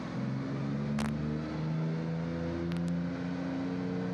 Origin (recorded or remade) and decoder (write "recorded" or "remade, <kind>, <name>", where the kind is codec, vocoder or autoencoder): recorded